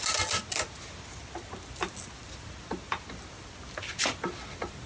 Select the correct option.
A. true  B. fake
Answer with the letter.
A